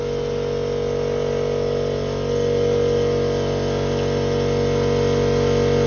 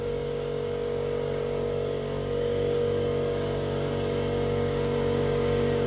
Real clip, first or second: first